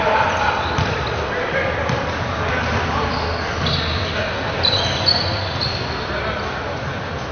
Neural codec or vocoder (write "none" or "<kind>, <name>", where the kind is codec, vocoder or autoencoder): none